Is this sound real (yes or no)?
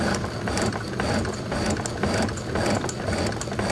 yes